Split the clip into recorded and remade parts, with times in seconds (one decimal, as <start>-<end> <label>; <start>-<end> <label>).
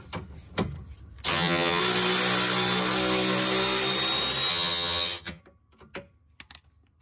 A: 0.0-1.3 recorded; 1.3-1.8 remade; 1.8-4.5 recorded; 4.5-5.4 remade; 5.4-7.0 recorded